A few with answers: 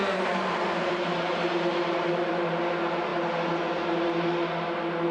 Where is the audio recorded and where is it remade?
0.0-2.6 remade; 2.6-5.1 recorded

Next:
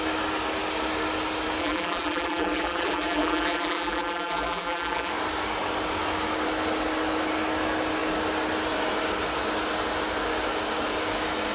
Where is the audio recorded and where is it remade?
0.0-1.6 recorded; 1.6-5.1 remade; 5.1-11.5 recorded

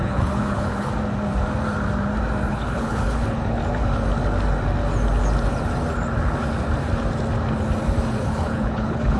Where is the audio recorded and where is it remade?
0.0-0.9 remade; 0.9-2.5 recorded; 2.5-3.6 remade; 3.6-8.2 recorded; 8.2-9.2 remade

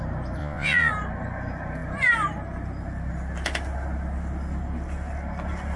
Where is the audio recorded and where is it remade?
0.0-0.4 recorded; 0.4-0.9 remade; 0.9-5.8 recorded

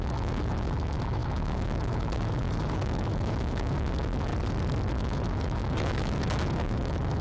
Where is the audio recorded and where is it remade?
0.0-4.3 remade; 4.3-4.9 recorded; 4.9-7.2 remade

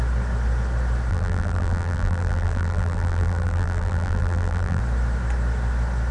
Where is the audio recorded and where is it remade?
0.0-1.1 recorded; 1.1-4.8 remade; 4.8-6.1 recorded

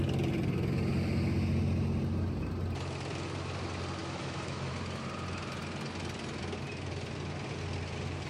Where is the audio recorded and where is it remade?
0.0-4.0 recorded; 4.0-4.7 remade; 4.7-8.3 recorded

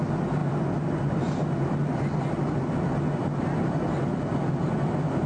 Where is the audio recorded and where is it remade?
0.0-5.3 recorded